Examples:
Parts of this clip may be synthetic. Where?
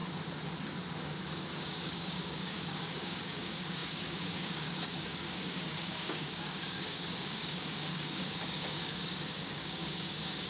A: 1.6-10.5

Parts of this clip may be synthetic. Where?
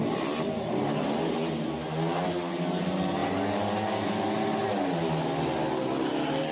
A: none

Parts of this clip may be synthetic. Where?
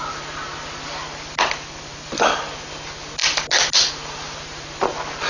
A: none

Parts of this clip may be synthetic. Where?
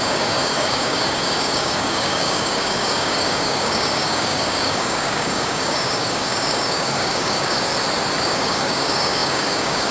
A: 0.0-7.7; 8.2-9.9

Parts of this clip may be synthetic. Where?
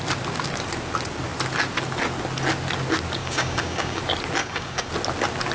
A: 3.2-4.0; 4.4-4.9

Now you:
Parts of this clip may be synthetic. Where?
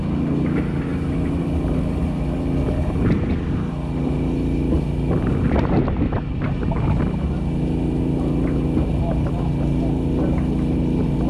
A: none